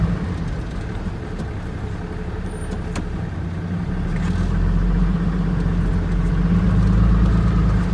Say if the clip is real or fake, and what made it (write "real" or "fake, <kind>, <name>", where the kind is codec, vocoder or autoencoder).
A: real